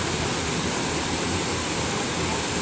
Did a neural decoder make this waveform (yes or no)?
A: no